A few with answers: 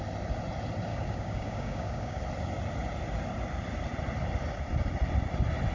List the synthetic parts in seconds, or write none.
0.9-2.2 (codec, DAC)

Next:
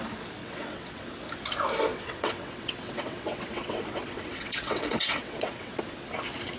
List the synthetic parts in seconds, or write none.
0.4-1.1 (vocoder, WaveNeXt); 1.9-5.8

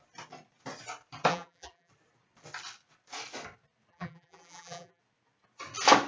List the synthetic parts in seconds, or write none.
1.3-1.9 (vocoder, BigVGAN v2); 3.9-5.0

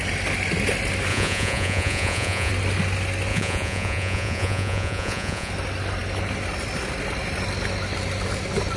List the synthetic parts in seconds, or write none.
1.1-2.5 (vocoder, Vocos); 3.3-5.5

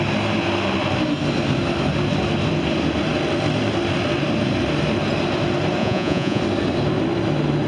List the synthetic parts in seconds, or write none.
5.8-6.4 (vocoder, Vocos)

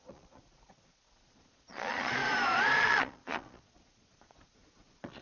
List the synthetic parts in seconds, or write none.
0.0-2.2 (vocoder, Vocos); 2.8-5.2

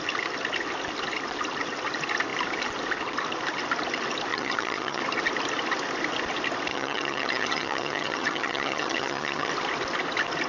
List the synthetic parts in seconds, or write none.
4.3-5.0 (vocoder, HiFi-GAN); 6.7-9.5